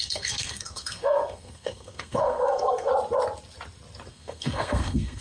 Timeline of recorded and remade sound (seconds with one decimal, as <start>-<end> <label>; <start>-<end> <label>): 0.0-2.9 remade; 2.9-4.1 recorded; 4.1-5.2 remade